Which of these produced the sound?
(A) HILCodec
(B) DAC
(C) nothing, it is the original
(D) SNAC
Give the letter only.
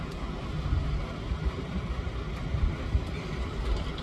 C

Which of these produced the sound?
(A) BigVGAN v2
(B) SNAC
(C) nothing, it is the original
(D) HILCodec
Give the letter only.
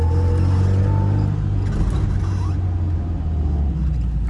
C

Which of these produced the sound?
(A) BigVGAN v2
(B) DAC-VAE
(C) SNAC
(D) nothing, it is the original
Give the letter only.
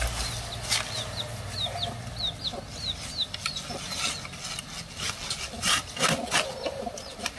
D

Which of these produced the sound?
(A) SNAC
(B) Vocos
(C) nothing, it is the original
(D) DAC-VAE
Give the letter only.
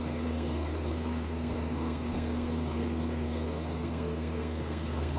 A